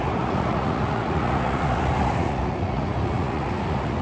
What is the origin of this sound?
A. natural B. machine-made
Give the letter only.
B